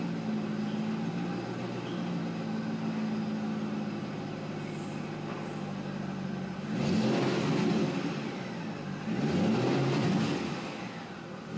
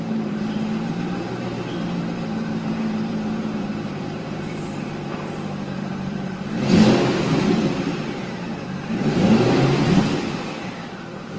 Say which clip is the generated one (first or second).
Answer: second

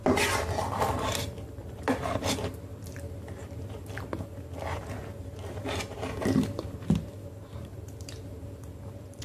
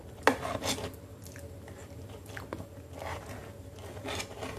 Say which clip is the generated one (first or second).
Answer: first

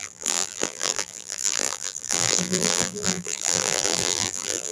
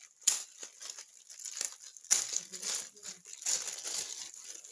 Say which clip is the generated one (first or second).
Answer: first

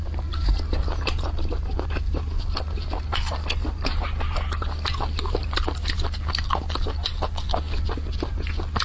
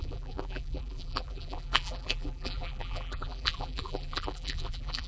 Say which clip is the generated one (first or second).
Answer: second